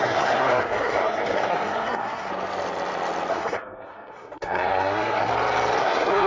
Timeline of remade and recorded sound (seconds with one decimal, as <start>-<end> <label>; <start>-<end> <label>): 0.0-2.3 remade; 2.3-3.3 recorded; 3.3-5.3 remade; 5.3-5.8 recorded; 5.8-6.3 remade